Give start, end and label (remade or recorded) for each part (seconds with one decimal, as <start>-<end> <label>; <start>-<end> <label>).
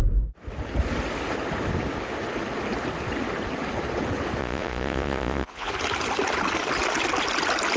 0.0-4.4 recorded; 4.4-5.7 remade; 5.7-7.8 recorded